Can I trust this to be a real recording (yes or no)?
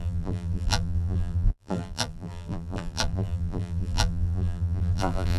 no